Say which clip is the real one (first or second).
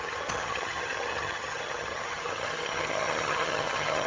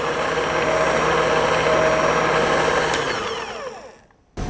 second